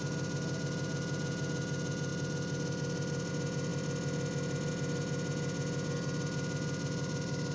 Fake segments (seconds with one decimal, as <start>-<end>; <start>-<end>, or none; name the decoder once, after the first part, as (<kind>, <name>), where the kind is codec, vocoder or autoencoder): none